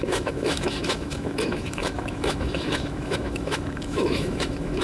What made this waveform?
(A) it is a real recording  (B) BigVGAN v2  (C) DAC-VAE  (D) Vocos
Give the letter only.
C